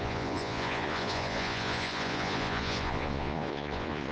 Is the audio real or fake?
fake